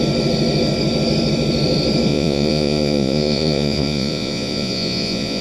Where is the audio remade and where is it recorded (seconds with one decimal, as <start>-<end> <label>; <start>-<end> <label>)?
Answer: 0.0-2.1 recorded; 2.1-5.4 remade